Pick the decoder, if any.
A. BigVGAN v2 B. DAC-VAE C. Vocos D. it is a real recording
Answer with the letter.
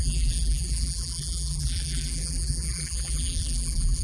A